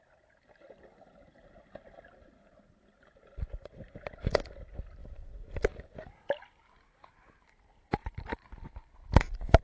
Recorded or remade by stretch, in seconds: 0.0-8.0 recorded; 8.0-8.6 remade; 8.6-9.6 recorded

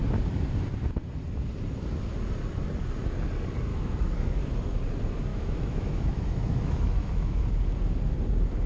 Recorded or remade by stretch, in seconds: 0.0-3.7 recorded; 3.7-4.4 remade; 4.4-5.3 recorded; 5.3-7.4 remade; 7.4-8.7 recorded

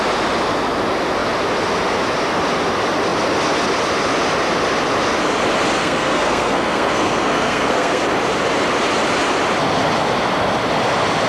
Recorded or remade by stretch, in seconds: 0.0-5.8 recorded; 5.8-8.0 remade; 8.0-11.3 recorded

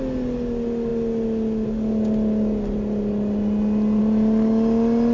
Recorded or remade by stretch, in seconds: 0.0-5.1 recorded